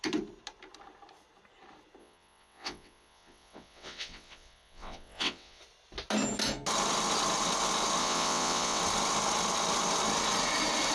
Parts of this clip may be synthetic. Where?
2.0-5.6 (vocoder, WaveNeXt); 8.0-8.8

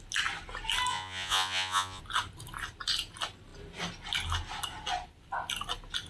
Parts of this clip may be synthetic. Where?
0.9-2.0 (vocoder, Vocos)

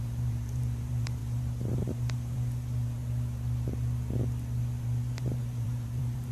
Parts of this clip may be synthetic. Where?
0.0-3.0 (vocoder, BigVGAN v2); 4.8-6.3

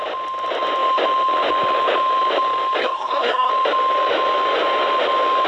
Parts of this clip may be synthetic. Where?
2.8-3.5 (codec, SNAC)